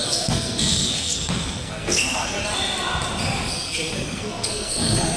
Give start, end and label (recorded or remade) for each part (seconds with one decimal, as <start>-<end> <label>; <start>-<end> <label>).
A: 0.0-2.4 remade; 2.4-3.5 recorded; 3.5-5.2 remade